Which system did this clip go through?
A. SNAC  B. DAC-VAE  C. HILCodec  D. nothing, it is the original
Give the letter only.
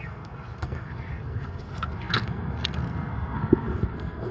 A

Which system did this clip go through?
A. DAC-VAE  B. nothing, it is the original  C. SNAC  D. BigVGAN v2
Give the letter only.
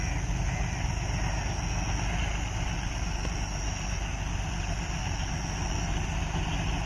B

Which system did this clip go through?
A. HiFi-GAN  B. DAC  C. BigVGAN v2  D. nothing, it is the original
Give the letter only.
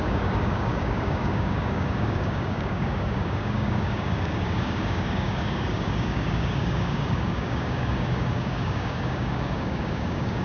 B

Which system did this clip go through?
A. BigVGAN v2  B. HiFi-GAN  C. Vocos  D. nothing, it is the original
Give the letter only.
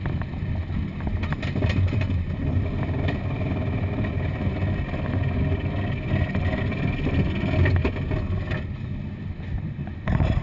D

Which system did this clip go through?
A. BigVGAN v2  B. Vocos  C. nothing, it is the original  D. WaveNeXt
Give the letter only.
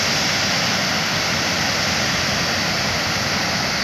C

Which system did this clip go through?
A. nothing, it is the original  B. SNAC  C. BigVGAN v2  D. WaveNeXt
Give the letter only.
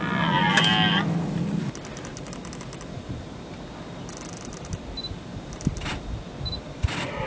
A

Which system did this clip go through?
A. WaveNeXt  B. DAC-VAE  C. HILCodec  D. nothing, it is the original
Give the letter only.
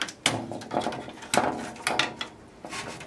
D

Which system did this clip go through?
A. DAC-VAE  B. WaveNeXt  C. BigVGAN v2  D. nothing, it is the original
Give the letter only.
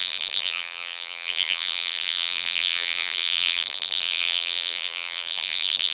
C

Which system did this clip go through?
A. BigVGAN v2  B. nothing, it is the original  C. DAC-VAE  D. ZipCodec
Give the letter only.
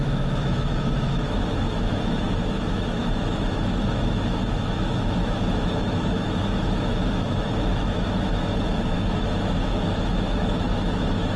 C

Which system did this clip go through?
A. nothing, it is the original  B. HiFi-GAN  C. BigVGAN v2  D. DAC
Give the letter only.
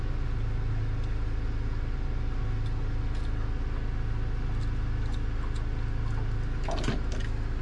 A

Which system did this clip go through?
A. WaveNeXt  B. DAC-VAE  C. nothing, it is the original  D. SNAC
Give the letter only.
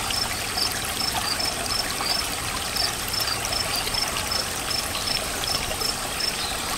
C